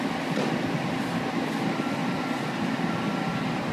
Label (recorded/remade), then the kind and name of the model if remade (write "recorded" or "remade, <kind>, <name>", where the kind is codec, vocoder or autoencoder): recorded